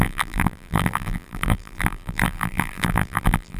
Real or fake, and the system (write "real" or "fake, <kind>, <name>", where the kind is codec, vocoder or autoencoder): fake, vocoder, BigVGAN v2